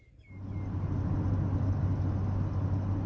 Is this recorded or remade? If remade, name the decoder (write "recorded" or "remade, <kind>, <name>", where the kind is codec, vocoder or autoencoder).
recorded